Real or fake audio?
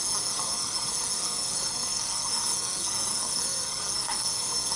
fake